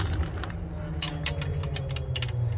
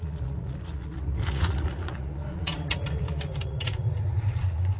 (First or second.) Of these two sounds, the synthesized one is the second